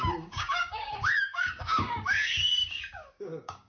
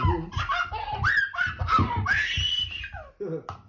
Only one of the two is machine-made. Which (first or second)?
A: first